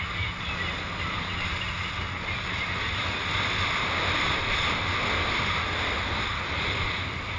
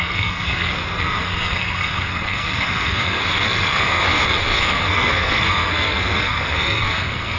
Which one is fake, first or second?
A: second